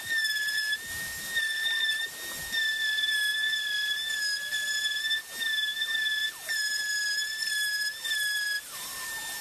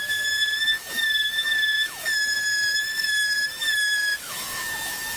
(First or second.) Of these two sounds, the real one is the first